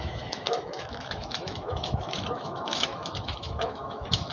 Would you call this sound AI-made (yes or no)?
yes